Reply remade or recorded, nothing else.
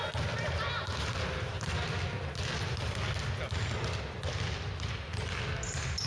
recorded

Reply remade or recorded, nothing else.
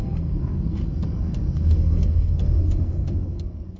remade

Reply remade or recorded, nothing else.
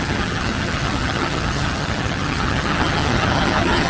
remade